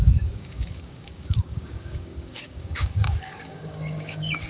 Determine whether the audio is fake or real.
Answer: fake